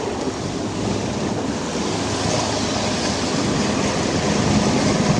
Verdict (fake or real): real